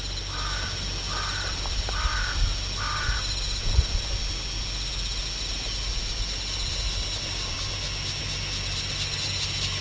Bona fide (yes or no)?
yes